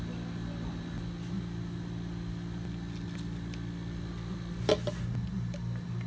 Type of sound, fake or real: real